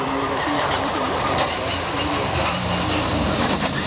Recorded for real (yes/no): yes